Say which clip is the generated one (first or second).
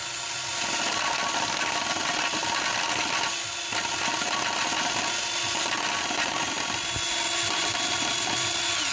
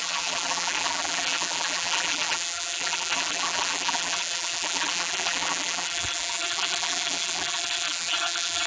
second